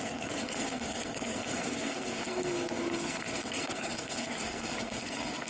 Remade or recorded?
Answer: remade